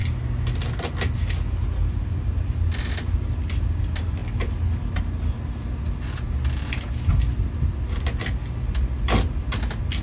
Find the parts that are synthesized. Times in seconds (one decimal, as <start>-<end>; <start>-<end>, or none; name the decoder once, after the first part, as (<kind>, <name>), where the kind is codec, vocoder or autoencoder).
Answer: none